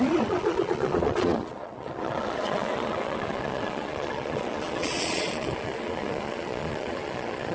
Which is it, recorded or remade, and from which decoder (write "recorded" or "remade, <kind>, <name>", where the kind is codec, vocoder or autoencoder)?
remade, vocoder, Vocos